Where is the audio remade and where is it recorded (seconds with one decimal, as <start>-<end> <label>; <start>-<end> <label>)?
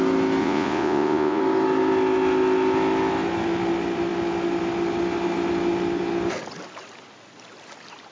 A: 0.0-0.4 recorded; 0.4-1.4 remade; 1.4-8.1 recorded